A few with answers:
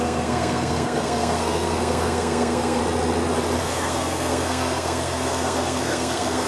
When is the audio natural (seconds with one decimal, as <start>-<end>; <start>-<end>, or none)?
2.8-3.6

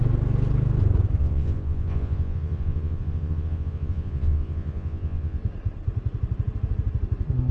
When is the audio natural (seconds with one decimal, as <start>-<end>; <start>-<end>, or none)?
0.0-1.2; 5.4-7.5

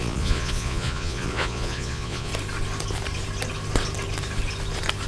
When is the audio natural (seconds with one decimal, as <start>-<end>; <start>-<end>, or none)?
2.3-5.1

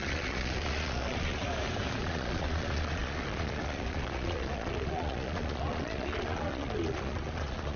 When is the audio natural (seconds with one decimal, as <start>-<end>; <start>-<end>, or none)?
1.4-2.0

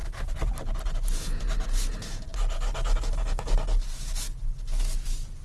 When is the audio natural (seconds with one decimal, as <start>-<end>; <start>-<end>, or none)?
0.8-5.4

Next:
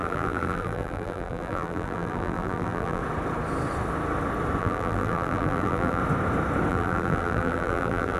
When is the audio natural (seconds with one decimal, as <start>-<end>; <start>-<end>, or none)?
3.0-4.6; 6.0-6.7

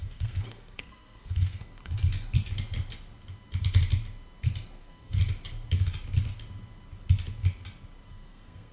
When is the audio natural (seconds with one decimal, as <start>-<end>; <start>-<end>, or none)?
1.8-4.8; 5.2-8.1

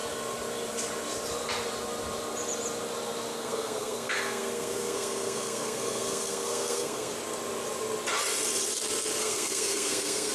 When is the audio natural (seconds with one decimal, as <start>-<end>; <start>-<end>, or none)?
0.0-3.3; 7.1-9.2